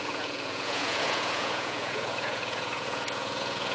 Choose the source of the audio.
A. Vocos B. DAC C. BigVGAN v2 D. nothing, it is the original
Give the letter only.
A